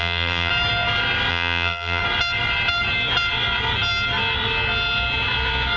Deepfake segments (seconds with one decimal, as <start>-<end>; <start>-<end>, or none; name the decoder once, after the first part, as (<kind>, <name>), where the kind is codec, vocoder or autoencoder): 0.0-0.5 (vocoder, BigVGAN v2); 1.3-2.0